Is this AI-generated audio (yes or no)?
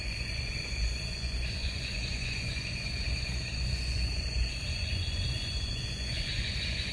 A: yes